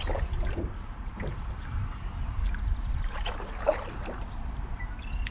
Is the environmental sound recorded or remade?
recorded